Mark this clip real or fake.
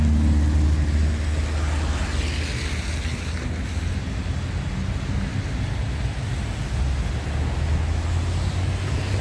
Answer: real